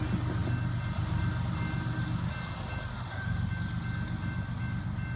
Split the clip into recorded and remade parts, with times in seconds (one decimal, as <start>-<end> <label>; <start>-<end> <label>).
0.0-2.9 recorded; 2.9-3.5 remade; 3.5-5.2 recorded